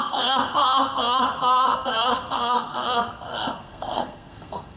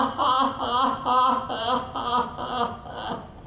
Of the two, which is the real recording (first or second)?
second